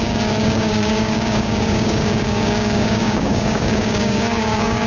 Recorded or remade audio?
remade